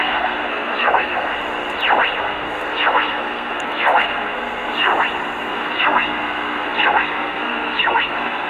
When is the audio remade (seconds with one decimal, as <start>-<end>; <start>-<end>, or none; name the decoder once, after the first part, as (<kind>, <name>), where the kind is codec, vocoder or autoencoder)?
0.0-1.3 (codec, SNAC); 2.2-4.9; 5.4-8.5